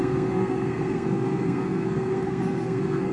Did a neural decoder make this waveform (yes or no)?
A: yes